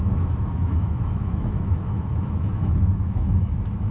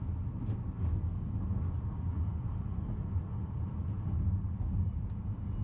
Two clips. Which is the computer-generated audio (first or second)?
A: first